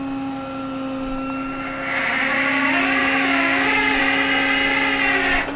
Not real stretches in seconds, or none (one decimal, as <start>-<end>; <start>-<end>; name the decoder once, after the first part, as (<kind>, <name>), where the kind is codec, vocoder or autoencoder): 3.0-4.0 (codec, DAC)